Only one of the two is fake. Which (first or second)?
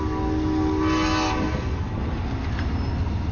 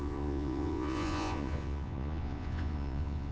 second